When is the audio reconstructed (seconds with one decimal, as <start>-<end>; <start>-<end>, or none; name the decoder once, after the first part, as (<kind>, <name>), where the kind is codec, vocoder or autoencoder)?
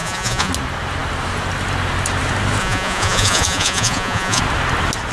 0.0-0.5 (vocoder, Vocos); 2.6-4.4